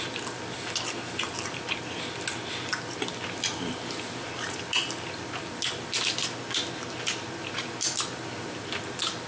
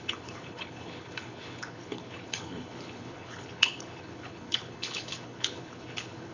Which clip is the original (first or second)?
first